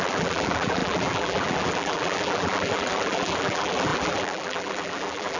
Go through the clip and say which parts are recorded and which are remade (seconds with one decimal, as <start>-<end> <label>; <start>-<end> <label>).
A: 0.0-5.4 remade